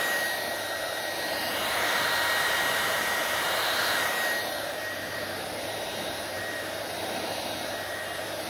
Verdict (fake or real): fake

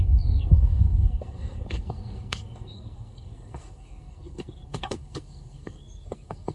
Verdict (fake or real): fake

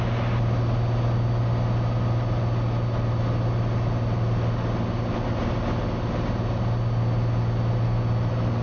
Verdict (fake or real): real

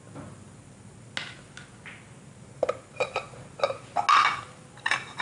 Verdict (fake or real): real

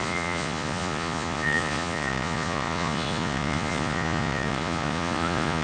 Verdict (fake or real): fake